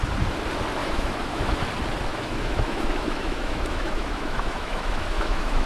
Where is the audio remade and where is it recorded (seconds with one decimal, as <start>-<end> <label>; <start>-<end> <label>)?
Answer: 0.0-0.8 recorded; 0.8-1.7 remade; 1.7-2.1 recorded; 2.1-5.7 remade